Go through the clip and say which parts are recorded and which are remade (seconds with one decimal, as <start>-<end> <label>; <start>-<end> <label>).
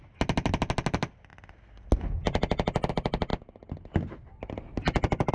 0.0-5.3 recorded